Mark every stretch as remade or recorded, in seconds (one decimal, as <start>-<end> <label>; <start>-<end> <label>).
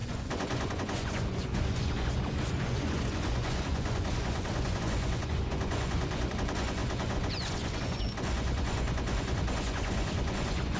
0.0-10.8 remade